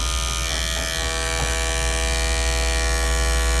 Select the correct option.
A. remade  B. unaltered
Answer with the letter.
B